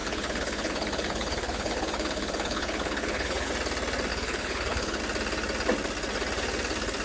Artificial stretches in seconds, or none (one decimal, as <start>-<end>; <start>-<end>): 0.0-3.5; 4.1-5.0

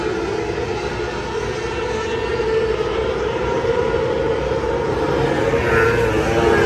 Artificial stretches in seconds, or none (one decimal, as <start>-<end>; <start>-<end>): 2.3-5.6

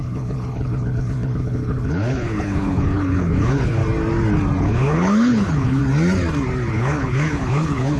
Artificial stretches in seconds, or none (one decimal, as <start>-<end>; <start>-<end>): 0.0-3.8; 4.6-5.8; 6.7-8.0

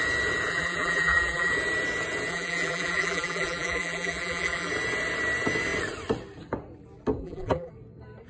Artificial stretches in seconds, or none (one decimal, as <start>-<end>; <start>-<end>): 0.5-1.5; 2.3-4.7; 7.2-7.7